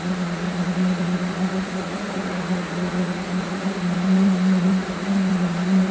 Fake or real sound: fake